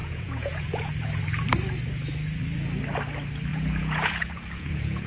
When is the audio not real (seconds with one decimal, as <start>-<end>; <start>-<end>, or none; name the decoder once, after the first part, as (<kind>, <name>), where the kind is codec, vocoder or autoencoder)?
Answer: 0.0-0.9 (vocoder, Vocos); 3.5-5.1